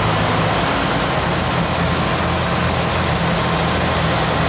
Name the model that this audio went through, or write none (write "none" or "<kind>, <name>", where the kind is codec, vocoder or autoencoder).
none